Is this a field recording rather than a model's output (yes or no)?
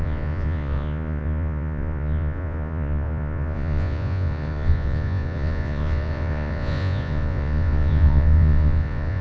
no